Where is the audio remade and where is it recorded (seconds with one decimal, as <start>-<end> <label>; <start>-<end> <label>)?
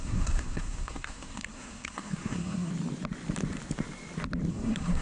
0.0-2.7 remade; 2.7-4.5 recorded; 4.5-5.0 remade